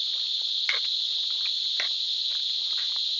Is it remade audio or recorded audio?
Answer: recorded